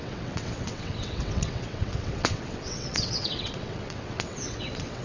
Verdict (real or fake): fake